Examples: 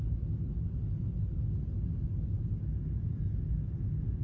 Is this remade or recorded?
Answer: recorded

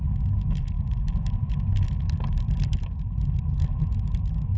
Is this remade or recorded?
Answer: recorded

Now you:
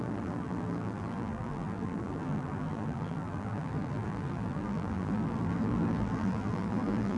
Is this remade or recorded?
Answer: remade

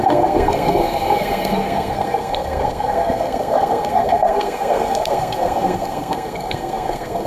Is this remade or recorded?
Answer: remade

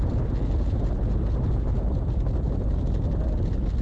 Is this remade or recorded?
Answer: recorded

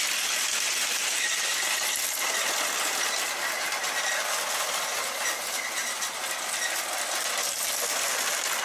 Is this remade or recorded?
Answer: recorded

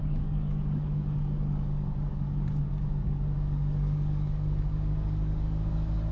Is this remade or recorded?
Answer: remade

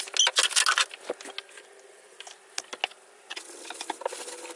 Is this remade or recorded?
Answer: recorded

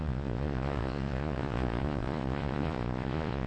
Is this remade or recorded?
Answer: remade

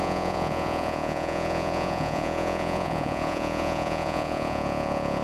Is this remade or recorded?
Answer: remade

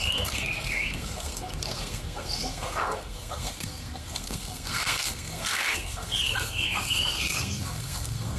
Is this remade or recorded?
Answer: remade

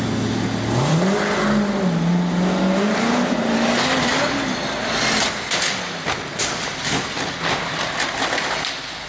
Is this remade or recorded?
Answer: recorded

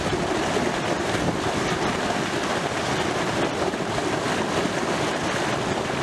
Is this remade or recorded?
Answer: recorded